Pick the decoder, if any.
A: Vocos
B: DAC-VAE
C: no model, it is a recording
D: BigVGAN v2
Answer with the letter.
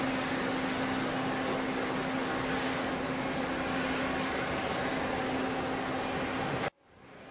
C